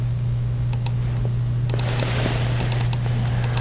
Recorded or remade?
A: recorded